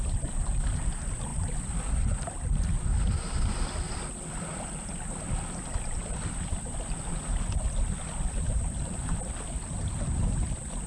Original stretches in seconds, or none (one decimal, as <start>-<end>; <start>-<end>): 0.0-10.9